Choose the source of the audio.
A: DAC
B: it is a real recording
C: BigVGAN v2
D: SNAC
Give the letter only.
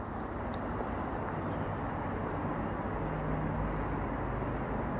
B